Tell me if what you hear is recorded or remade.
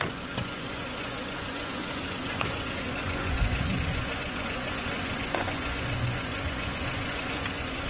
remade